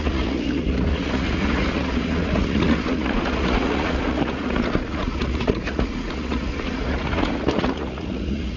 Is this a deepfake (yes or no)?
yes